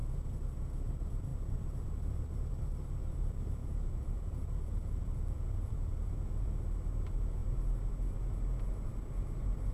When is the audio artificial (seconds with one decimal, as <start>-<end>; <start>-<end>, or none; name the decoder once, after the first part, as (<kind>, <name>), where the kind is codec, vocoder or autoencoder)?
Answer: 3.6-6.6 (vocoder, Vocos)